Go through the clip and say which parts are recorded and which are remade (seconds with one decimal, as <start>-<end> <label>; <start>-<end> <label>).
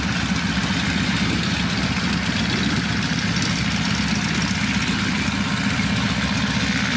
0.0-7.0 recorded